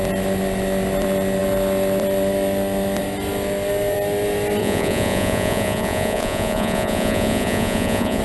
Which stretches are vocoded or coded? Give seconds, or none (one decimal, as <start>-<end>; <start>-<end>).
4.6-8.2